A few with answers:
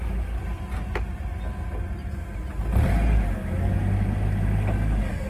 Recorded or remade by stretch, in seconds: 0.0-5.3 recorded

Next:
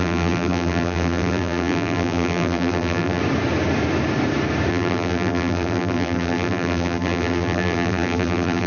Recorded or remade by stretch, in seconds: 0.0-3.2 remade; 3.2-4.7 recorded; 4.7-8.7 remade